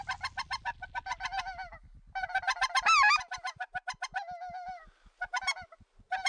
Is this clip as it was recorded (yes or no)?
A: yes